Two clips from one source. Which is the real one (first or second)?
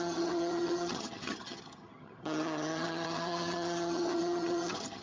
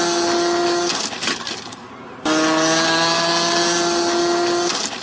second